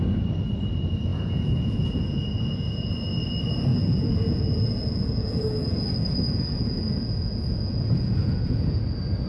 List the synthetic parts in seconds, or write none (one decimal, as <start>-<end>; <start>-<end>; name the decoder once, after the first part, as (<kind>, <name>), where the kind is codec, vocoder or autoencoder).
1.1-2.9 (vocoder, Vocos); 3.7-8.8